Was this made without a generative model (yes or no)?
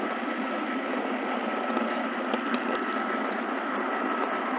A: yes